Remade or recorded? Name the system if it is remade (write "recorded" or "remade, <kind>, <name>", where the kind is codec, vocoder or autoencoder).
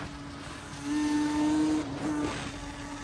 recorded